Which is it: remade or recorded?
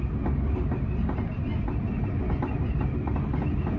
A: recorded